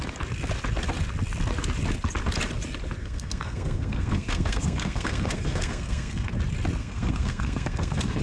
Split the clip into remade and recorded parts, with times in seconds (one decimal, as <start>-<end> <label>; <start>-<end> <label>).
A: 0.0-3.0 recorded; 3.0-6.3 remade; 6.3-6.8 recorded; 6.8-8.2 remade